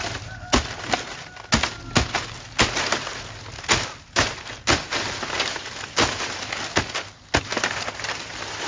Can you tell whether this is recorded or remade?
recorded